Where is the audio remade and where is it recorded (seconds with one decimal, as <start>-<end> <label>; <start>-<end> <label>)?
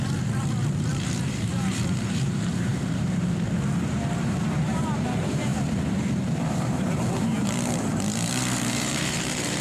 0.0-9.6 remade